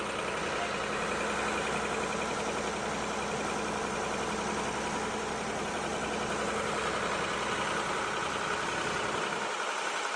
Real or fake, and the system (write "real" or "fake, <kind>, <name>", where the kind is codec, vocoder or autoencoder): real